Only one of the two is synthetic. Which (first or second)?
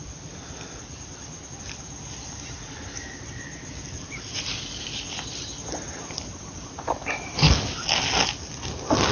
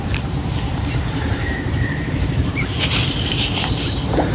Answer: second